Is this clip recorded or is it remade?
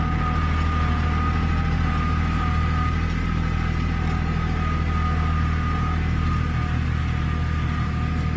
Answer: recorded